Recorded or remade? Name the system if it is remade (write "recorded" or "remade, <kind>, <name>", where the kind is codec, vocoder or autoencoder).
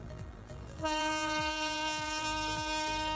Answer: remade, vocoder, BigVGAN v2